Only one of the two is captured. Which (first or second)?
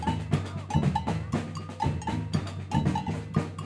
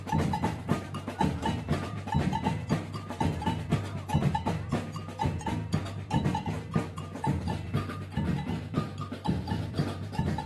first